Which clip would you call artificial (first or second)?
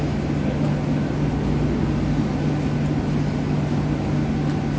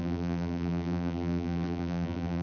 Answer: second